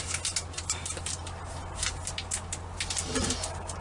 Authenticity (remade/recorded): recorded